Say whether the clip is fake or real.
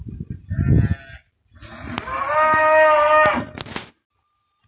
real